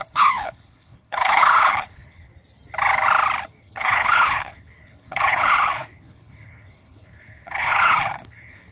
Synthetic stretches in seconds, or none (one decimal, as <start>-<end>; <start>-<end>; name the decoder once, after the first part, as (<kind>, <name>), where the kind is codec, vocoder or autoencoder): 0.0-2.3 (codec, HILCodec); 3.6-8.7